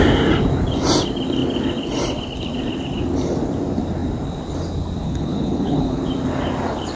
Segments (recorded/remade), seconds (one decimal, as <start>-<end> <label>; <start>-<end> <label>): 0.0-5.0 recorded; 5.0-6.0 remade; 6.0-7.0 recorded